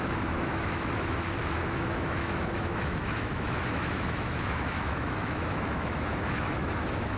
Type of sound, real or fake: fake